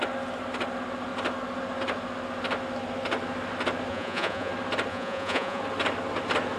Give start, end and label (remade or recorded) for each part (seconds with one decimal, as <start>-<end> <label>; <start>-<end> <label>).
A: 0.0-3.9 recorded; 3.9-4.5 remade; 4.5-4.9 recorded; 4.9-5.6 remade; 5.6-6.6 recorded